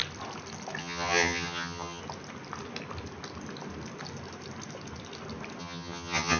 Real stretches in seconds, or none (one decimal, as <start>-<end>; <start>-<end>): 0.0-0.8; 2.0-5.6